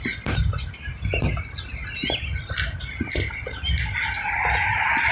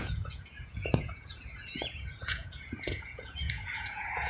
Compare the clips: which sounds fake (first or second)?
second